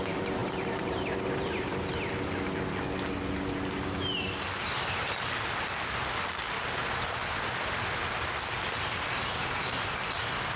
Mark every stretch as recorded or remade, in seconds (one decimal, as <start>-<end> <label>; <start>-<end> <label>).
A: 0.0-0.4 recorded; 0.4-2.1 remade; 2.1-10.6 recorded